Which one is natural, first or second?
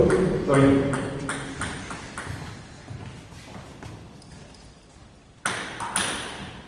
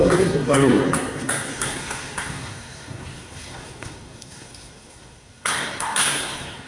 first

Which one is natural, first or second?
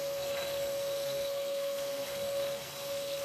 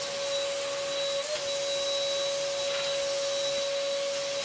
second